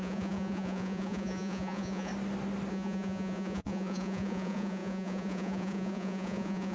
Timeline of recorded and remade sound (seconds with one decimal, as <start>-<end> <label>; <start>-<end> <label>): 0.0-2.1 remade; 2.1-2.7 recorded; 2.7-6.7 remade